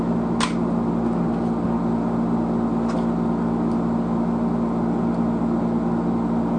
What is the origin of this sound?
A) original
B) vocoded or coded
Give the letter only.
A